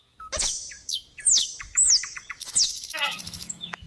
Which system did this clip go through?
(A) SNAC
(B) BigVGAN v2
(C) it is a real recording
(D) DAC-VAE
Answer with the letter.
D